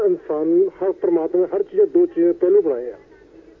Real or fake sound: real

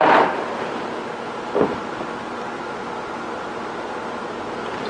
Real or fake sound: real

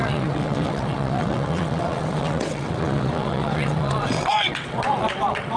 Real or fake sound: fake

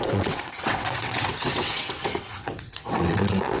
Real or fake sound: fake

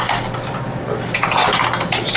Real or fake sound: real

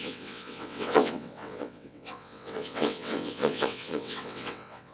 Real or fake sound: fake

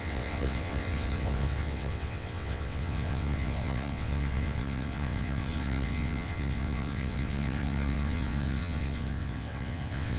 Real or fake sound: fake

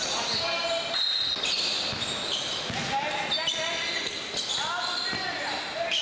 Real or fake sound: real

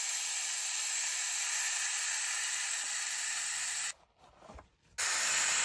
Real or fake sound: real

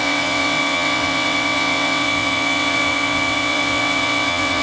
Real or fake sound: fake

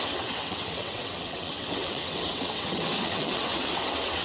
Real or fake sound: fake